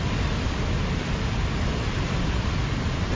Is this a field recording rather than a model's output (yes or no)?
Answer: yes